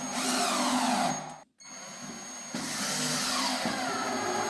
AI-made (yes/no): no